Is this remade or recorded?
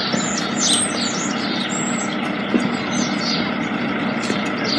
recorded